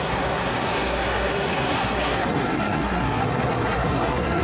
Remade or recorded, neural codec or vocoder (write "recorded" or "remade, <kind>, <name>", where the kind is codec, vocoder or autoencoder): remade, codec, SNAC